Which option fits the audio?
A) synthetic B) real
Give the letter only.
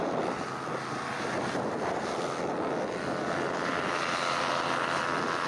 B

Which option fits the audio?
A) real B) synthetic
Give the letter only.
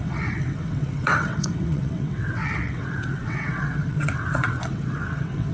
B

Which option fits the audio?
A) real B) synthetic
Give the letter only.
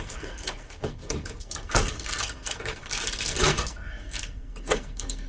B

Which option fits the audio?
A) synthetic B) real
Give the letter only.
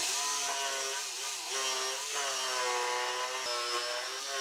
B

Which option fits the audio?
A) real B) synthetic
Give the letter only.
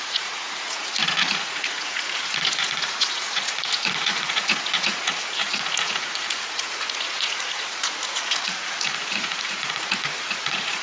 B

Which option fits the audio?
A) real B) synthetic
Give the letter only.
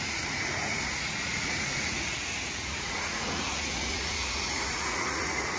B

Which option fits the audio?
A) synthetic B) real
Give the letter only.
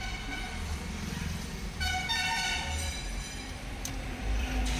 A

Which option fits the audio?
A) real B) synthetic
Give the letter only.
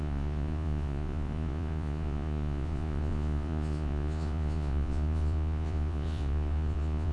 B